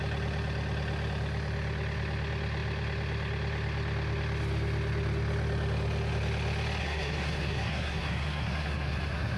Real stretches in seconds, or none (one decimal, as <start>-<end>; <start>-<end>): 0.0-6.8